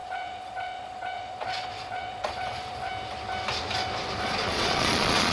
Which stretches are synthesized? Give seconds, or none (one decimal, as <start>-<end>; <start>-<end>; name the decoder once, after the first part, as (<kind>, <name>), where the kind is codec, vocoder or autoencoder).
0.0-2.9 (vocoder, Vocos); 4.2-5.3